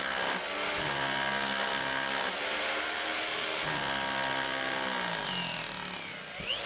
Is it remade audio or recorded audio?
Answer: recorded